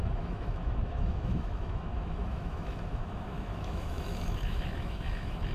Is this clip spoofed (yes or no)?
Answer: yes